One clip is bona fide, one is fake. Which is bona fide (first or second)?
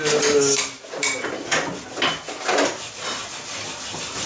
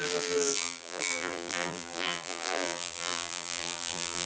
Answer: first